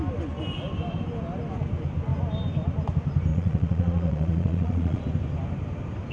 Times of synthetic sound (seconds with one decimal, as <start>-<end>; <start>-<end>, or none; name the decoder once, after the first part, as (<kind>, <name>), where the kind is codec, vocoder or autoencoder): 3.3-5.0 (vocoder, Vocos)